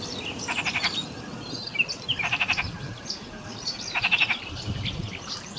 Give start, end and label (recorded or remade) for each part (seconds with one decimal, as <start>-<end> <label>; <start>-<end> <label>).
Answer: 0.0-5.6 recorded